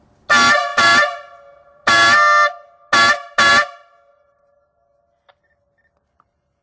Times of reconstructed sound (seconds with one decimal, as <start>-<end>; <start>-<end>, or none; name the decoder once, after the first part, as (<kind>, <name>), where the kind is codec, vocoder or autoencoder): none